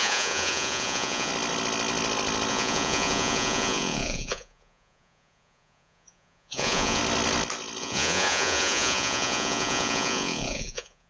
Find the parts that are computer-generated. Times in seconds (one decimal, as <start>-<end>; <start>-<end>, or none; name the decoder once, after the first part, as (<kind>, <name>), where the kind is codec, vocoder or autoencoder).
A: 0.0-1.3 (vocoder, Vocos); 2.5-7.0; 7.8-11.1